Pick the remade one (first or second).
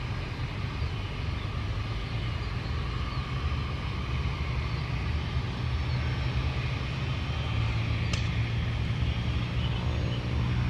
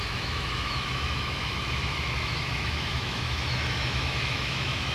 second